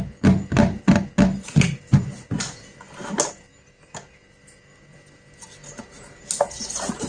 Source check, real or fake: real